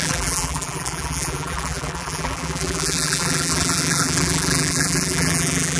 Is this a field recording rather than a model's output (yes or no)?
no